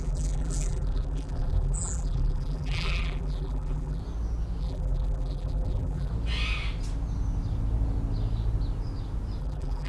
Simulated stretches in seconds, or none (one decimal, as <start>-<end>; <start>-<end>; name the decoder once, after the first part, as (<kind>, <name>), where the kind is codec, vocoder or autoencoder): 0.0-4.0 (vocoder, BigVGAN v2); 4.6-6.1; 9.4-9.9